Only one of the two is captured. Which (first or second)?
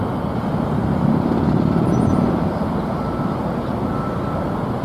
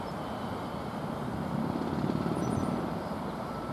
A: first